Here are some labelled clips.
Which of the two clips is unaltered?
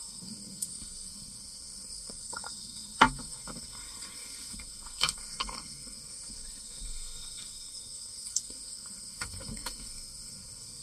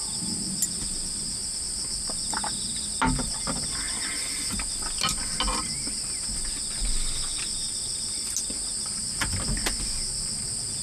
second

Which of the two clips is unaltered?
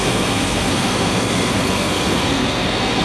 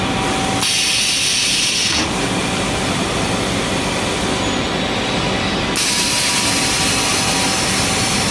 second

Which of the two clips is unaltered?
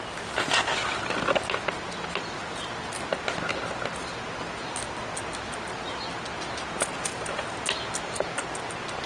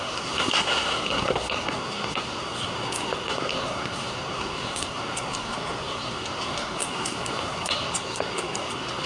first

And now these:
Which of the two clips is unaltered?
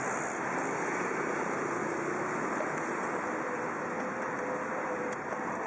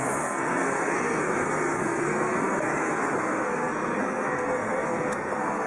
first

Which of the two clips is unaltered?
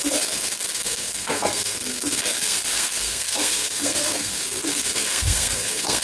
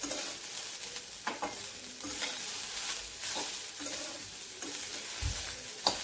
second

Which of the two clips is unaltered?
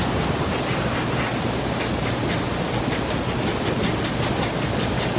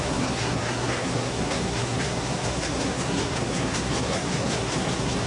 first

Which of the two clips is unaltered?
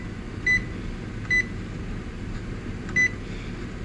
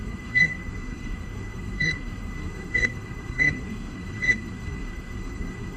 first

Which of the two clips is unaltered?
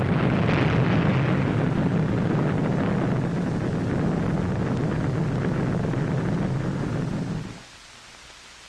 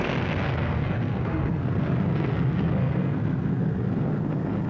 first